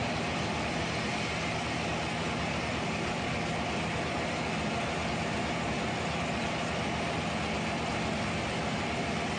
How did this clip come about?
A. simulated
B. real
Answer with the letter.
B